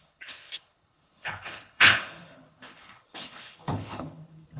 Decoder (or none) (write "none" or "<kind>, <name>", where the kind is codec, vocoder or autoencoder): codec, HILCodec